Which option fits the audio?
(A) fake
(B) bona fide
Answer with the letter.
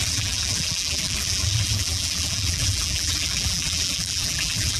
A